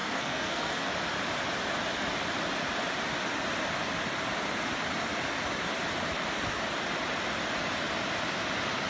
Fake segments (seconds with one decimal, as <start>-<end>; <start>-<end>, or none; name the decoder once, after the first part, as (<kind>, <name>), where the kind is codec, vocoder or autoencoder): 0.0-0.9 (codec, SNAC)